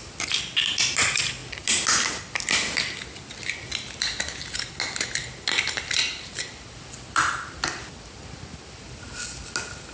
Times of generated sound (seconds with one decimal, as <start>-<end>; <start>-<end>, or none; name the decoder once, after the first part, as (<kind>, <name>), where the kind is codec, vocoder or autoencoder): none